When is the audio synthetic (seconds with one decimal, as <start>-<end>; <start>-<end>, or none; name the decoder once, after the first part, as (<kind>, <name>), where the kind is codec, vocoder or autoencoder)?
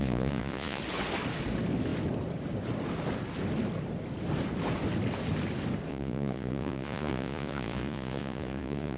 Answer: 0.0-0.8 (vocoder, Vocos); 5.9-9.0